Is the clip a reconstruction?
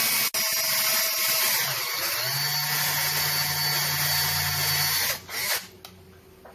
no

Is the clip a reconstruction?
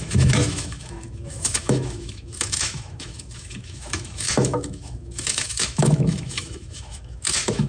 yes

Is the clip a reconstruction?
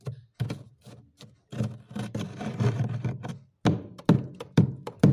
no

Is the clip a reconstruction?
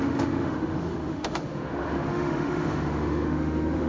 yes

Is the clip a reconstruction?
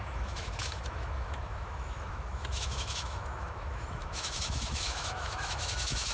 yes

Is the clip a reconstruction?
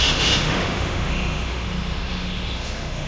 yes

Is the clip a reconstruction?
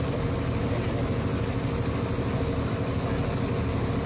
no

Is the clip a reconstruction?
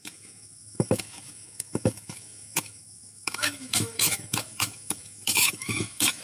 yes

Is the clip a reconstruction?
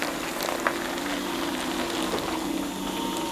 no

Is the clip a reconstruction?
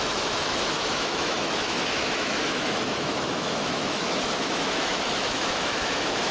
yes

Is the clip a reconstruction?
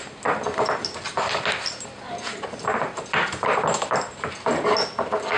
no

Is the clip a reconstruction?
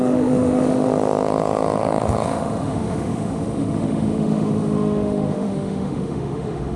yes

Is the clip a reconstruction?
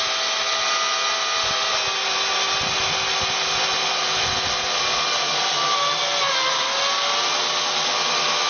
no